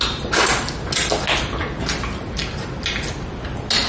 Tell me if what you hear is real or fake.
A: real